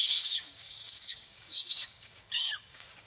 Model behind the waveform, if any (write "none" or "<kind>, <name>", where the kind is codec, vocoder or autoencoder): codec, DAC